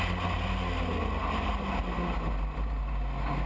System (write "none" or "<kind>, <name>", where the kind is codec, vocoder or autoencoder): none